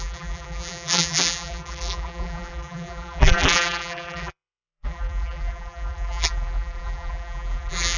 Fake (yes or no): yes